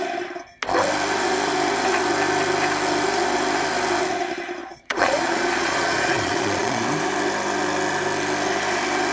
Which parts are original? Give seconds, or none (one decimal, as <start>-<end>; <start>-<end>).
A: 0.0-4.6; 6.8-9.1